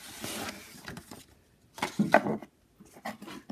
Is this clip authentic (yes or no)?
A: yes